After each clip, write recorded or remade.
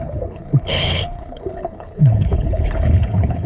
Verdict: remade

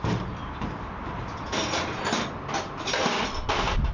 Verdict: recorded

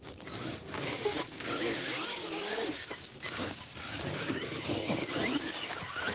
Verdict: remade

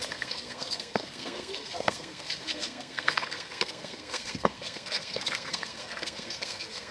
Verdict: remade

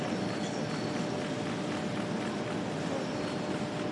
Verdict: recorded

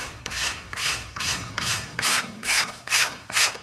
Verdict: remade